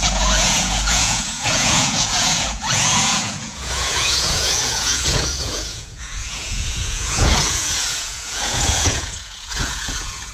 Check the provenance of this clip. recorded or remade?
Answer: remade